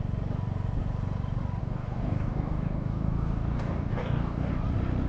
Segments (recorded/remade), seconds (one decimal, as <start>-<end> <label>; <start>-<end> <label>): 0.0-1.6 recorded; 1.6-4.5 remade; 4.5-5.1 recorded